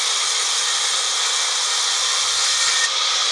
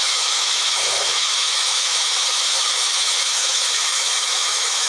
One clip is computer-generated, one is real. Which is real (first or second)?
first